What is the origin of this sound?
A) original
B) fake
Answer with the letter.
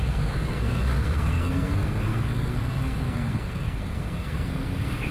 B